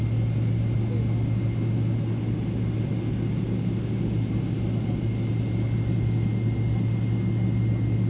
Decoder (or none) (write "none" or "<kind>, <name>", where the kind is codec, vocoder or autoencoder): none